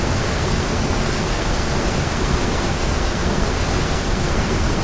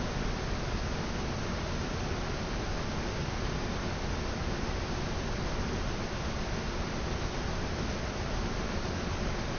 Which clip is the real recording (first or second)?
second